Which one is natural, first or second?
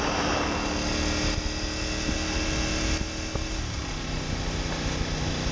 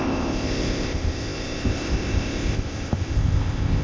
first